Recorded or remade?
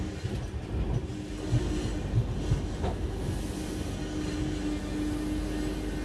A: recorded